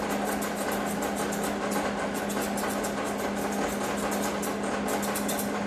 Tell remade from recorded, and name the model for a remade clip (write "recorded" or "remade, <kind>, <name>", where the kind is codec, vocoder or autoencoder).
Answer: recorded